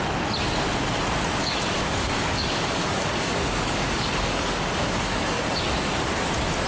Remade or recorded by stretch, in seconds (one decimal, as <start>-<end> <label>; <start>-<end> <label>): 0.0-1.4 recorded; 1.4-5.4 remade; 5.4-6.7 recorded